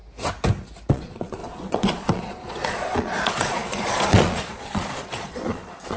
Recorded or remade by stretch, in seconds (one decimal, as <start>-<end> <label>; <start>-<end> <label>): 0.0-0.9 recorded; 0.9-6.0 remade